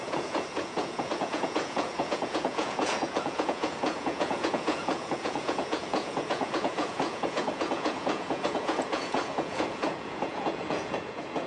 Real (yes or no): no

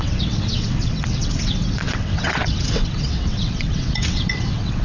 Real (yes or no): no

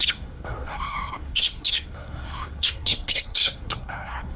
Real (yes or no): no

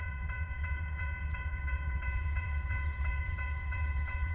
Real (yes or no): no